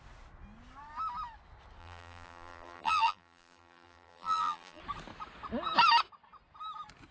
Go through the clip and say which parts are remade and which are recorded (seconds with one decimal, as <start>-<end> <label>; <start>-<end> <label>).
0.0-1.8 recorded; 1.8-4.8 remade; 4.8-7.1 recorded